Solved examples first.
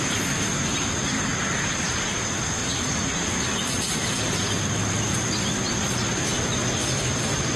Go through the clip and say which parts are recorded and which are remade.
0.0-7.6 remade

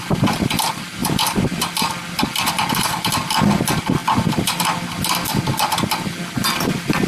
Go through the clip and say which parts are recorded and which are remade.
0.0-7.1 recorded

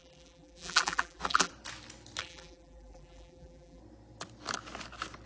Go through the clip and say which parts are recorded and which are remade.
0.0-1.5 remade; 1.5-2.2 recorded; 2.2-3.8 remade; 3.8-5.3 recorded

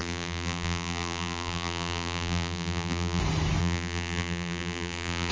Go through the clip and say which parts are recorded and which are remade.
0.0-3.2 remade; 3.2-3.6 recorded; 3.6-5.3 remade

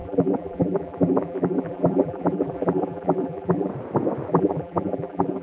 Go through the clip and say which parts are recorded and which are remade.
0.0-3.7 remade; 3.7-4.3 recorded; 4.3-5.4 remade